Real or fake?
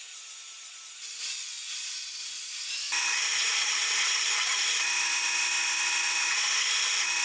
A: fake